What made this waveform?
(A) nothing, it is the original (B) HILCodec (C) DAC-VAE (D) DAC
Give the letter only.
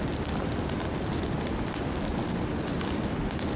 A